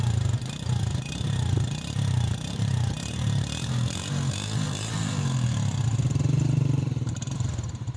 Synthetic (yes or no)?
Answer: yes